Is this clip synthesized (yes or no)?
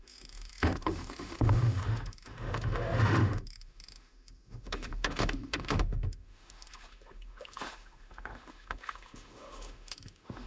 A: yes